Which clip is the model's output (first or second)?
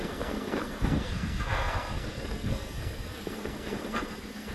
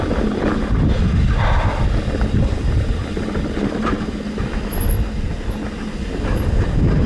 first